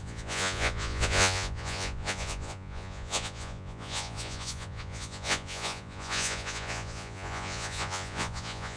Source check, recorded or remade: remade